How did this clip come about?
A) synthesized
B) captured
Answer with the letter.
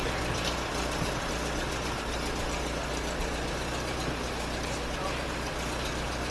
B